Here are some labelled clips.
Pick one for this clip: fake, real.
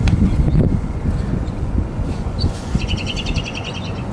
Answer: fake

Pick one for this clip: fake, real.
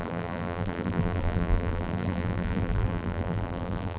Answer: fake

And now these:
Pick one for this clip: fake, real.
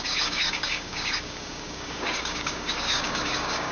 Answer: fake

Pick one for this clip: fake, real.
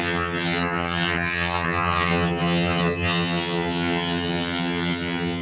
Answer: fake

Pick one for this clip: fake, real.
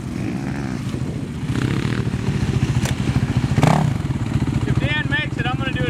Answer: real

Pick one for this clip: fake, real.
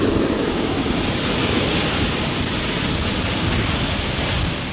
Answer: real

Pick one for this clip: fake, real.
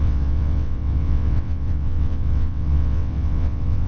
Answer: fake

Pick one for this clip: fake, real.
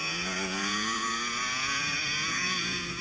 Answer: fake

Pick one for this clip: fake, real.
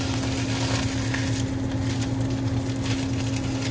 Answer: real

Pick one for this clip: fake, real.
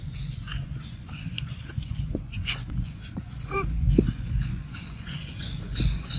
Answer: fake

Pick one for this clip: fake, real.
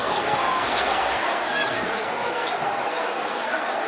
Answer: fake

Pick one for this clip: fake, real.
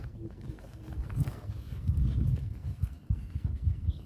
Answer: fake